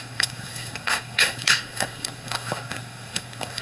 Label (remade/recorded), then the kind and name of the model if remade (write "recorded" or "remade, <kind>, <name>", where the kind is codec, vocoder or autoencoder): remade, codec, SNAC